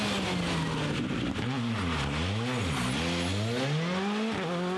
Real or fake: real